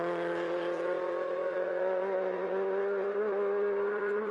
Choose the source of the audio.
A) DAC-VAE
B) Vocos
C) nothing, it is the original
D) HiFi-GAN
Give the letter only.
B